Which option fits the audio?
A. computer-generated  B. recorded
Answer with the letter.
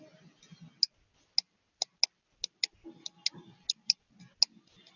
B